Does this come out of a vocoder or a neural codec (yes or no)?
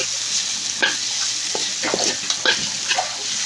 no